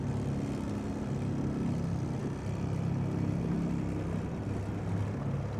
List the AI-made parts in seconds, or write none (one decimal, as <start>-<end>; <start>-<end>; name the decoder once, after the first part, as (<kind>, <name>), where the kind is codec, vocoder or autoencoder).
none

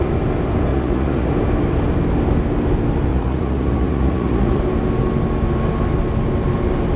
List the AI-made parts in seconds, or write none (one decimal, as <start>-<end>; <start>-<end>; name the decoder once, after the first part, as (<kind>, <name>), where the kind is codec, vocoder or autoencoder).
0.7-1.3 (vocoder, Vocos); 3.1-4.6